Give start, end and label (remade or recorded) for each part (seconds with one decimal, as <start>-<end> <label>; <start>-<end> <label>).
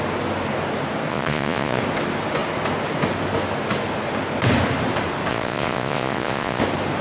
0.0-1.1 recorded; 1.1-1.8 remade; 1.8-5.3 recorded; 5.3-6.6 remade; 6.6-7.0 recorded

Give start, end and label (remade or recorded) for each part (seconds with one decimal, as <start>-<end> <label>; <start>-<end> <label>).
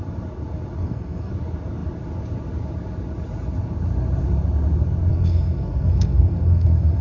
0.0-0.8 recorded; 0.8-1.3 remade; 1.3-5.1 recorded; 5.1-7.0 remade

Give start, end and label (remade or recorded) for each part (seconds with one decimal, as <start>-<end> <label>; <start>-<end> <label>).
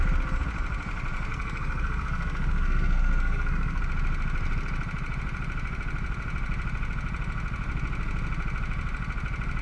0.0-1.3 recorded; 1.3-3.8 remade; 3.8-9.6 recorded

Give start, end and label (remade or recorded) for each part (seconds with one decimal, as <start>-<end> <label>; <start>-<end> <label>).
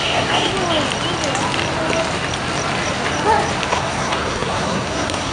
0.0-0.5 remade; 0.5-3.7 recorded; 3.7-5.3 remade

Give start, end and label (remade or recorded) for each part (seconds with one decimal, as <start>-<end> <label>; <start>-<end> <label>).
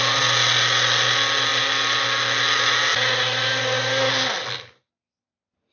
0.0-5.7 recorded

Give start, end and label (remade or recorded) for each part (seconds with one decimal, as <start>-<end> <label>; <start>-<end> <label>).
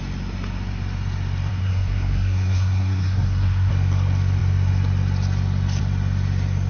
0.0-1.5 recorded; 1.5-3.7 remade; 3.7-6.7 recorded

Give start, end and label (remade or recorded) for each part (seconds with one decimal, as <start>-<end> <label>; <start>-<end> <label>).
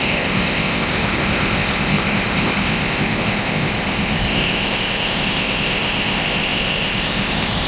0.0-7.7 remade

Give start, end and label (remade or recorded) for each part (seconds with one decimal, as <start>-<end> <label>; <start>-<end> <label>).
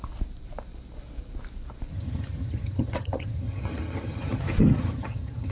0.0-1.9 recorded; 1.9-5.5 remade